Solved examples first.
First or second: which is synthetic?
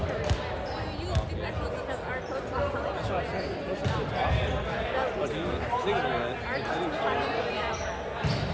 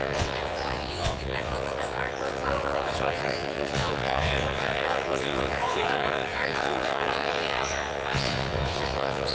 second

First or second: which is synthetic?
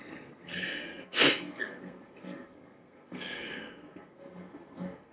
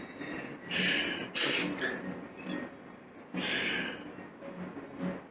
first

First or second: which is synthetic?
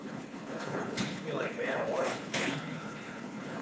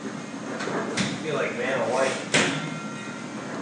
first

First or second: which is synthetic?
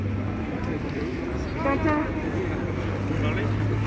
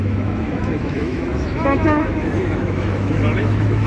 second